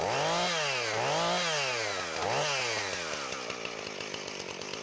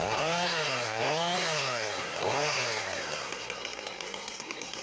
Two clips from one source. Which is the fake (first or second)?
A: second